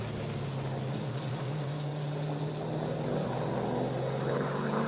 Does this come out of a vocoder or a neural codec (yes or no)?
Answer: no